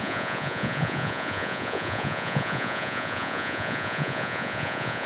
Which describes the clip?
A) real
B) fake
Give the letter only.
B